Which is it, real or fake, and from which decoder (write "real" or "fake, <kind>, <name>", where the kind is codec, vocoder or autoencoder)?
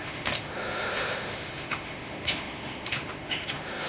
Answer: fake, autoencoder, DAC-VAE